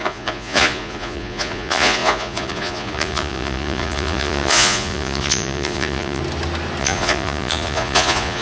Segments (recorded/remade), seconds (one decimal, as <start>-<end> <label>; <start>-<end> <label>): 0.0-6.2 remade; 6.2-6.8 recorded; 6.8-8.4 remade